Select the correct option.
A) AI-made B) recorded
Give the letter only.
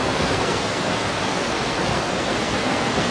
A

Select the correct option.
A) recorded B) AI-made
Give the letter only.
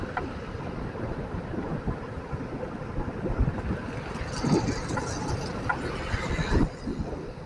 A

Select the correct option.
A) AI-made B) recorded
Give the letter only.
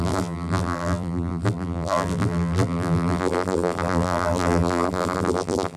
A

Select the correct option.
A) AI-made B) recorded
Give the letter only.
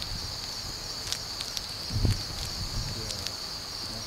B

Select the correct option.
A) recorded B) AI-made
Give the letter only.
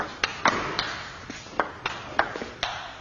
A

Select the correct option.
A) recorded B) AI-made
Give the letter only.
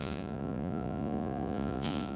B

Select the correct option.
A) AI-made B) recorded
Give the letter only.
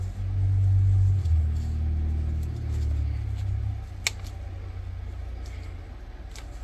B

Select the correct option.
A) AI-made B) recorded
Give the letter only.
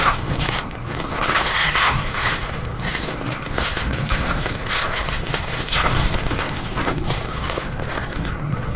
A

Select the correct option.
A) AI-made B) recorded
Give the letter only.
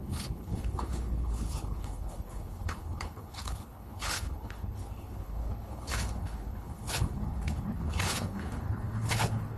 A